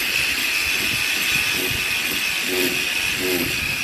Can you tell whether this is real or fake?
real